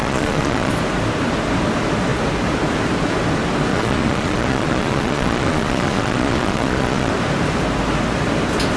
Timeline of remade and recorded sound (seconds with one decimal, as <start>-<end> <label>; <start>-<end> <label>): 0.0-0.7 remade; 0.7-3.7 recorded; 3.7-7.1 remade; 7.1-8.8 recorded